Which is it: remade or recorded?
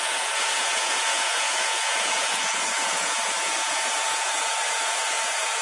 remade